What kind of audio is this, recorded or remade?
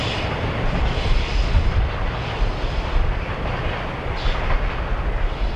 recorded